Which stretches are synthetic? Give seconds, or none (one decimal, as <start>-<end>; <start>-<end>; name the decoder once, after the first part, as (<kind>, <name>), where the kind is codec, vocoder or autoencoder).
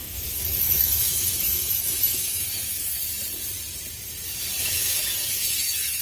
0.0-3.0 (autoencoder, DAC-VAE); 4.6-6.0